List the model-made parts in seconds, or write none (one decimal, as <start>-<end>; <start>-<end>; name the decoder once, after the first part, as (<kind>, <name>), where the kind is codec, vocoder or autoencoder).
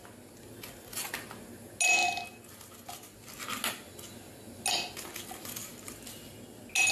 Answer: none